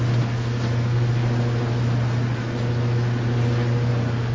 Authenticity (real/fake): real